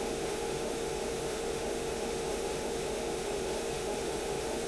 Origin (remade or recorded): remade